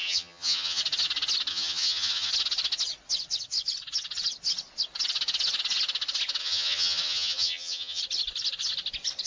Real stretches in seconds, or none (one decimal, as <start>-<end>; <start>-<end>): 0.8-1.5; 2.3-6.4; 8.0-9.3